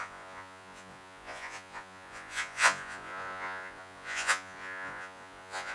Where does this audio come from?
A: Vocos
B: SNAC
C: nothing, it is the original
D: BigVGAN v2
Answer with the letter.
A